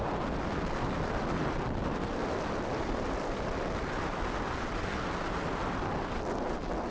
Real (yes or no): yes